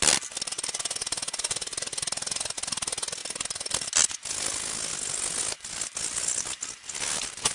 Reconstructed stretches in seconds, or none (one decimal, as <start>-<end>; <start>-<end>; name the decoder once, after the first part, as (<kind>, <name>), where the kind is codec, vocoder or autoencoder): none